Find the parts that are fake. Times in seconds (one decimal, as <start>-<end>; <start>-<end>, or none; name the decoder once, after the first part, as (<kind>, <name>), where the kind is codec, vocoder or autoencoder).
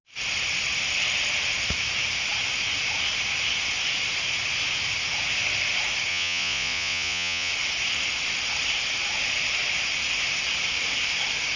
6.1-7.5 (vocoder, Vocos)